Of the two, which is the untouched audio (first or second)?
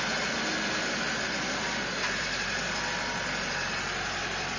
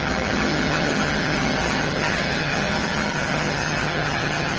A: first